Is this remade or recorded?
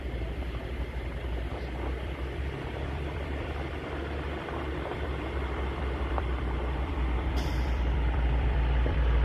remade